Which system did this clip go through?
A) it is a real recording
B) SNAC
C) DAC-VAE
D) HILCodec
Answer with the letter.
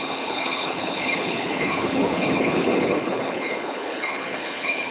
D